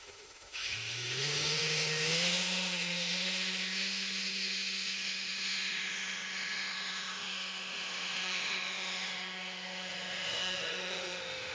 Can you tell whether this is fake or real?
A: fake